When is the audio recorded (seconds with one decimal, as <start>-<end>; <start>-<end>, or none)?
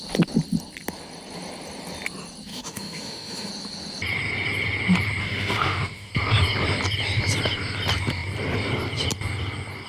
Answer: 0.0-2.5; 3.5-5.2; 6.1-9.9